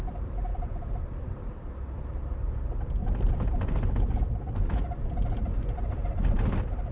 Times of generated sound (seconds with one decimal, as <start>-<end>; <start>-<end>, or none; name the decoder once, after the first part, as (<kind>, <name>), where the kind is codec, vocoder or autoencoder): 0.5-2.2 (vocoder, BigVGAN v2); 3.0-5.1